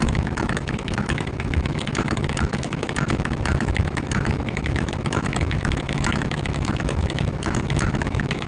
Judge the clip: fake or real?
fake